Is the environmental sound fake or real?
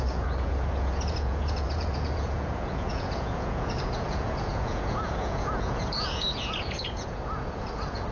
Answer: fake